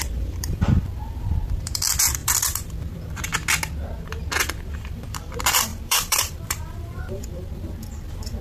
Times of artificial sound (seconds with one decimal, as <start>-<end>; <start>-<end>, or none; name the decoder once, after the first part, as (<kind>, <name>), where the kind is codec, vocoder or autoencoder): 0.0-3.3 (vocoder, BigVGAN v2); 4.8-8.4